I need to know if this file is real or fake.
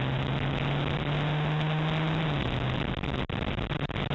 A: real